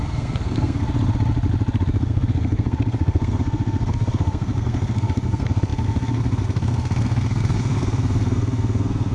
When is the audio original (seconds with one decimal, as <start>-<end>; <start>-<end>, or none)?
0.9-2.0